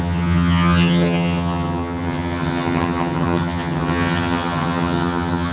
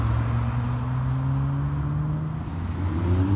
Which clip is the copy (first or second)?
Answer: first